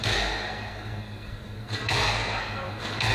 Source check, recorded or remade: remade